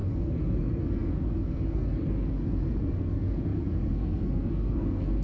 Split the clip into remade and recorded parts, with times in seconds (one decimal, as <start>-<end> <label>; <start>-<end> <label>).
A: 0.0-5.2 remade